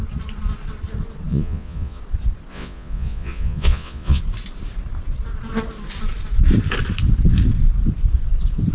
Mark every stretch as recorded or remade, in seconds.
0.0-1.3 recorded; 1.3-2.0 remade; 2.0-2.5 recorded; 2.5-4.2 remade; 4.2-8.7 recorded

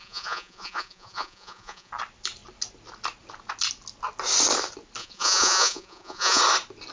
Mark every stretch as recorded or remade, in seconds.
0.0-1.9 remade; 1.9-5.0 recorded; 5.0-6.4 remade; 6.4-6.9 recorded

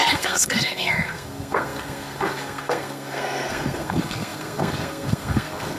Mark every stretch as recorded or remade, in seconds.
0.0-5.8 remade

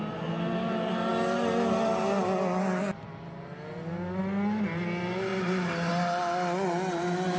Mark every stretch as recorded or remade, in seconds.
0.0-7.4 recorded